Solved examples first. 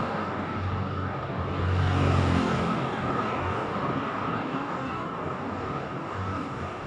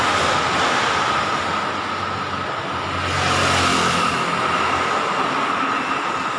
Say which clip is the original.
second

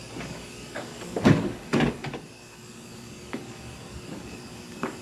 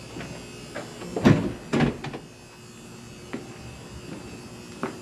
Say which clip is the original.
second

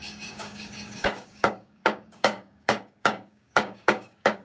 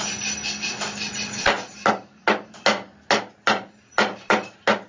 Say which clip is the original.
second